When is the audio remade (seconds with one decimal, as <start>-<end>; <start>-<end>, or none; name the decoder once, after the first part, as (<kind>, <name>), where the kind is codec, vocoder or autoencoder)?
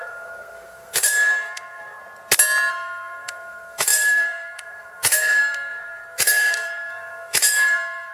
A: 0.0-2.0 (codec, SNAC); 2.7-8.1